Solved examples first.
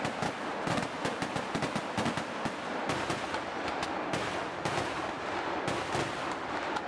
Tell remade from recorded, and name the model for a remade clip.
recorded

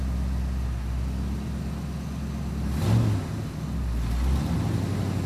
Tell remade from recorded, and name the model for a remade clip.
recorded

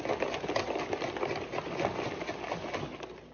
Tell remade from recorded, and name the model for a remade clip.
recorded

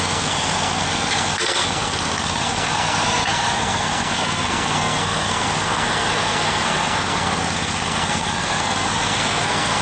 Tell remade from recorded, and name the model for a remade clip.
remade, codec, SNAC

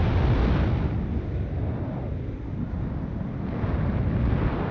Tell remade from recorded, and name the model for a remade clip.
recorded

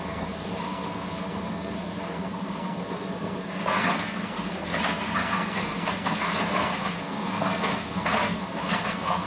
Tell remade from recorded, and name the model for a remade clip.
remade, codec, SNAC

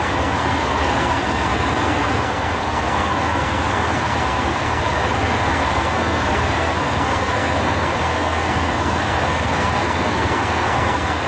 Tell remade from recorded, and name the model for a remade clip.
remade, codec, SNAC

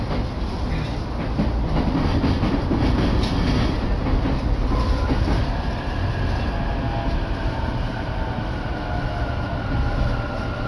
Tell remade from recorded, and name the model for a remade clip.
recorded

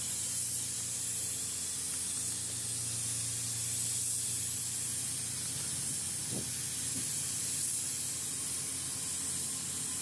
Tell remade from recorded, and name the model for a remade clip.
recorded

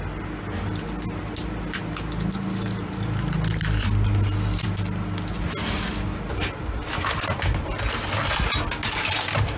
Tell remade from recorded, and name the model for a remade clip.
recorded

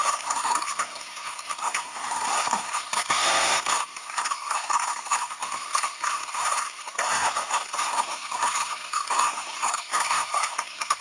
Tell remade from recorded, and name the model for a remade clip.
remade, codec, SNAC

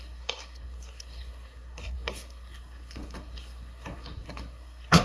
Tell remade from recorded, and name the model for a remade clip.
remade, codec, SNAC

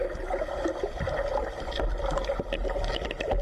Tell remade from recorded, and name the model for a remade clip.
recorded